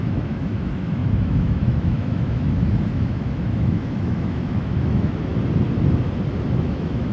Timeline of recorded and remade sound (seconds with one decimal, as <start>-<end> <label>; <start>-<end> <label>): 0.0-5.3 remade; 5.3-6.6 recorded; 6.6-7.1 remade